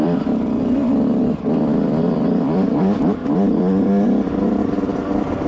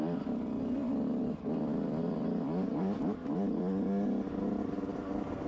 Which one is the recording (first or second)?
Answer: second